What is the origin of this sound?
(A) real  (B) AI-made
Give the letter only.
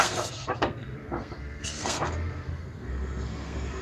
B